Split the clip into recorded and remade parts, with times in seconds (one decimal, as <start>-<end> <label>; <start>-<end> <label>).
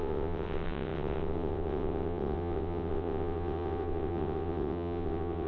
0.0-5.5 remade